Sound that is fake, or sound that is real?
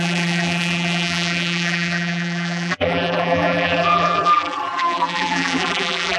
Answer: fake